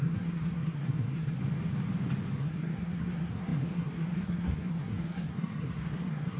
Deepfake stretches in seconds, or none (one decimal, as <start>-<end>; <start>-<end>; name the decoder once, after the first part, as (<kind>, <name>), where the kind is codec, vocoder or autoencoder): 0.0-1.4 (codec, SNAC); 2.4-6.4